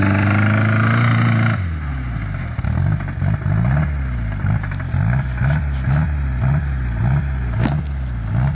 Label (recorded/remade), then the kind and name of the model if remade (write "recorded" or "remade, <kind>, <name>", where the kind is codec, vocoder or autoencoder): recorded